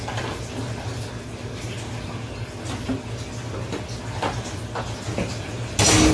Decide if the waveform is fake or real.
real